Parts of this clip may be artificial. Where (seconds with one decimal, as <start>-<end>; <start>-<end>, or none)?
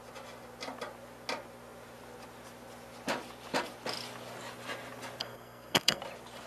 5.2-6.0